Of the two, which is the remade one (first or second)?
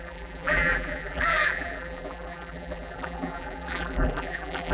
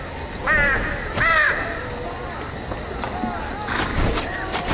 first